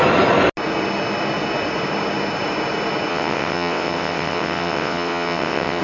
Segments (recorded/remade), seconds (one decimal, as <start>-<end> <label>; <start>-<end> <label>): 0.0-3.1 recorded; 3.1-5.8 remade